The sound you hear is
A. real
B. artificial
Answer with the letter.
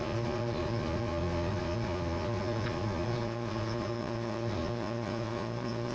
B